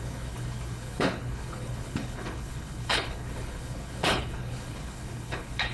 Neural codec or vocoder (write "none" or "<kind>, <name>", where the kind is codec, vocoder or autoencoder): codec, HILCodec